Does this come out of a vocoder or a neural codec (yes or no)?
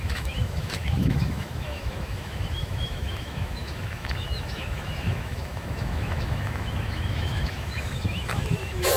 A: yes